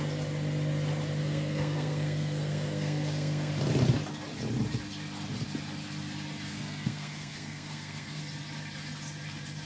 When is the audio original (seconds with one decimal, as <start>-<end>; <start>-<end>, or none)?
0.0-1.2; 3.5-6.5; 8.2-9.7